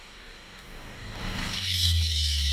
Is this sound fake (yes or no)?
yes